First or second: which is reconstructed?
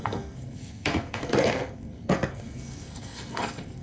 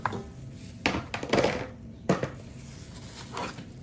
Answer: first